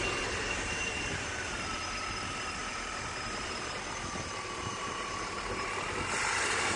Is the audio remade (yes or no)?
no